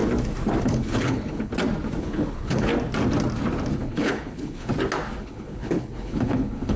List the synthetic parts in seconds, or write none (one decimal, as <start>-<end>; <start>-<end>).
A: 0.6-1.5; 2.0-2.7; 3.8-4.7; 5.2-6.8